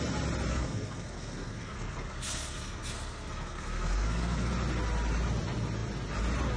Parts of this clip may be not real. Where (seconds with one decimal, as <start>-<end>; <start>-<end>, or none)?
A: 0.5-4.5